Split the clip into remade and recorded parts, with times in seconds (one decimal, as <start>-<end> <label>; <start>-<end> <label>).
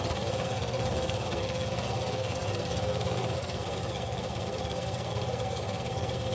0.0-6.3 remade